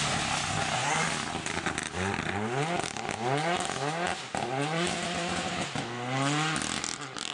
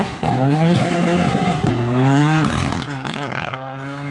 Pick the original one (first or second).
first